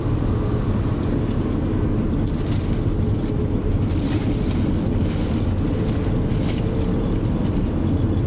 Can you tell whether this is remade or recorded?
recorded